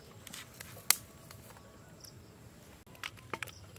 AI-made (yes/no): no